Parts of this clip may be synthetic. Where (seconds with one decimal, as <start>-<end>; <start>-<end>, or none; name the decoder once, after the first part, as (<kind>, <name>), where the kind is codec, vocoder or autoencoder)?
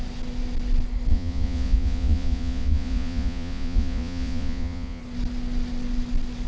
1.1-5.0 (vocoder, Vocos)